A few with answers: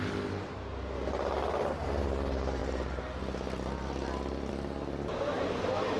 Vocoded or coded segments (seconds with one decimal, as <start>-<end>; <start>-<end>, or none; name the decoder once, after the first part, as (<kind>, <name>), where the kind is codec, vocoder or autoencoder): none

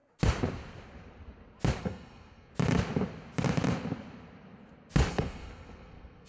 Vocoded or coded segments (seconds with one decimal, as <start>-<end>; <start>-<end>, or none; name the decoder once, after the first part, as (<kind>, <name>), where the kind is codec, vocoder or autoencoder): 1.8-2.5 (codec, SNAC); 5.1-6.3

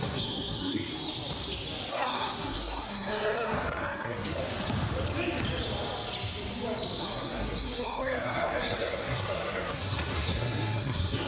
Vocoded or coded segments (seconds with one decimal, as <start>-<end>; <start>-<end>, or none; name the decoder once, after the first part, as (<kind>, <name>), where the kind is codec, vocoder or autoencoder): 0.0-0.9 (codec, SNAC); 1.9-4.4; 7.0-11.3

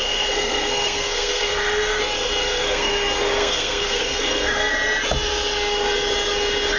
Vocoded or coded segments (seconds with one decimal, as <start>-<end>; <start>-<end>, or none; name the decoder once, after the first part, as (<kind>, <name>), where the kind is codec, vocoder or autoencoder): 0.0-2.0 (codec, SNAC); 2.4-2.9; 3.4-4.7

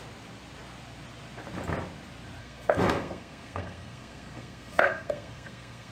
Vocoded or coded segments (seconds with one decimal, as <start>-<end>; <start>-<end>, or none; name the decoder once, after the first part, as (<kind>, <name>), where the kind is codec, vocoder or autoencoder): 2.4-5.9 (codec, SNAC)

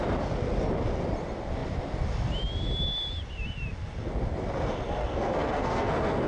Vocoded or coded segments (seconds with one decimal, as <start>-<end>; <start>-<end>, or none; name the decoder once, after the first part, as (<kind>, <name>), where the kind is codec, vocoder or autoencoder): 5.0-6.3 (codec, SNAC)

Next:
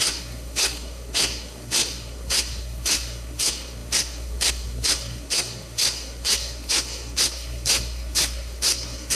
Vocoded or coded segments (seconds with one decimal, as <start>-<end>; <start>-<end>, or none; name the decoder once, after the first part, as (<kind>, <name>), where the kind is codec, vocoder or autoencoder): 0.0-9.1 (codec, SNAC)

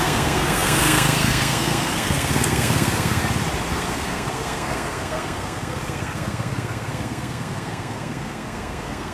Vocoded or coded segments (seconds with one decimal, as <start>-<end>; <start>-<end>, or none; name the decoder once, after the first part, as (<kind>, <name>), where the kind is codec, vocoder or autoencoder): 0.0-3.2 (codec, SNAC); 3.7-9.1